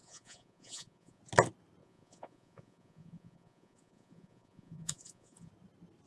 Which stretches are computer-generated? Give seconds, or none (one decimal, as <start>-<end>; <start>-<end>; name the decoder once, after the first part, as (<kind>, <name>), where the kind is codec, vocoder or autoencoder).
0.0-1.2 (vocoder, Vocos); 1.8-5.5